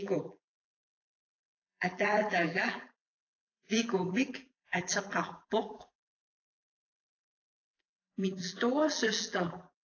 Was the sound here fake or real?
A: fake